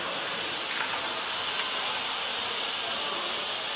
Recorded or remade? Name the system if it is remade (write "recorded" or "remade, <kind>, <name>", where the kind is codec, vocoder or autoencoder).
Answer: recorded